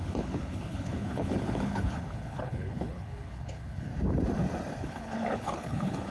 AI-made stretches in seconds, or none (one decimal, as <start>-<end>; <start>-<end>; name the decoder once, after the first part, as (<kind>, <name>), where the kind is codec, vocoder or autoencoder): 0.0-3.9 (codec, HILCodec); 4.8-6.1